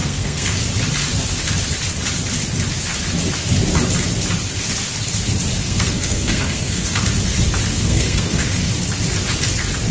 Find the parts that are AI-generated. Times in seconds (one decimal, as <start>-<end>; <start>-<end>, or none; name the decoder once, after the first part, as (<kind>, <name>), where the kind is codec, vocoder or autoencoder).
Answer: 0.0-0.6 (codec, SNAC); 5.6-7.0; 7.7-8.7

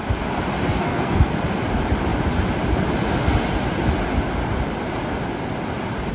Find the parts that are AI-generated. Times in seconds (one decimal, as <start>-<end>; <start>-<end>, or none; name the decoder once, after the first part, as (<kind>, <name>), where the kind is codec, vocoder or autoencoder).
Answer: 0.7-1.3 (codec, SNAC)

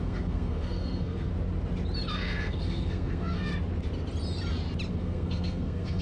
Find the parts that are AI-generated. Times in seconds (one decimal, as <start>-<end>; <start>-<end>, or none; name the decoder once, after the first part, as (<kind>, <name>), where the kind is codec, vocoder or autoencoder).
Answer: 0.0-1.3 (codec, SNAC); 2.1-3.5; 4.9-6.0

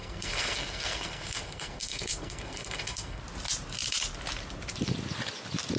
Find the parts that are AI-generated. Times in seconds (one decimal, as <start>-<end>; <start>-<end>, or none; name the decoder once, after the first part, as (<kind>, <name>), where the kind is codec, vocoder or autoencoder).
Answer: 0.0-3.2 (codec, SNAC)

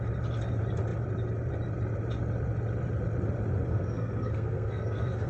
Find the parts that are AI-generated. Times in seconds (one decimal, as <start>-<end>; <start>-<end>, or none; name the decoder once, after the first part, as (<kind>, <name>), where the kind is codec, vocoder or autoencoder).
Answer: 3.7-5.3 (codec, SNAC)

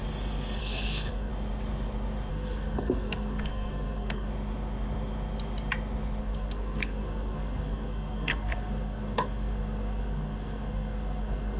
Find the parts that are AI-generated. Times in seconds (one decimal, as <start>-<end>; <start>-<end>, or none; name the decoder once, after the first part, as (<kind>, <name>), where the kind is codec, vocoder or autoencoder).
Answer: 0.6-1.3 (codec, SNAC); 2.3-4.3; 6.2-11.6